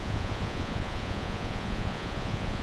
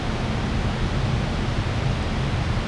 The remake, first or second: first